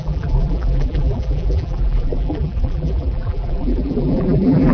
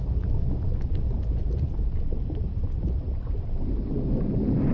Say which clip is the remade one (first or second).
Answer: first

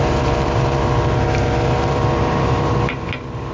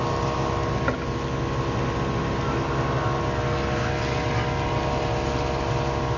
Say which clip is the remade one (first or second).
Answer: first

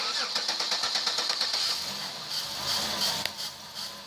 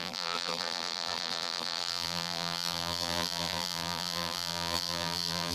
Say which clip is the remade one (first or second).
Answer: second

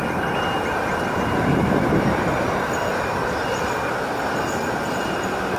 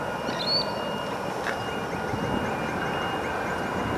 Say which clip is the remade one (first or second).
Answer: first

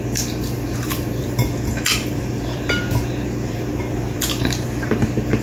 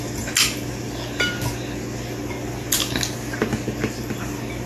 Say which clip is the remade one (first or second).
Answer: first